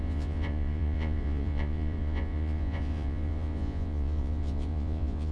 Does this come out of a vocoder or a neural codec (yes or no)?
yes